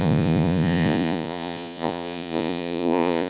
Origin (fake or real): fake